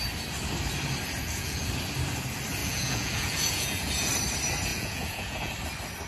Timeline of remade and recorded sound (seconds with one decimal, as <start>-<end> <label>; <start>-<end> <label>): 0.0-1.2 recorded; 1.2-1.7 remade; 1.7-2.6 recorded; 2.6-4.1 remade; 4.1-4.7 recorded; 4.7-5.5 remade; 5.5-6.1 recorded